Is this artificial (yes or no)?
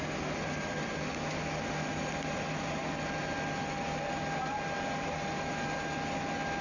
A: no